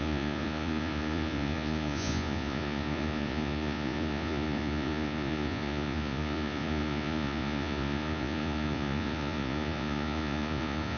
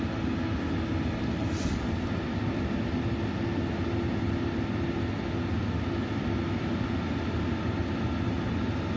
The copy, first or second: first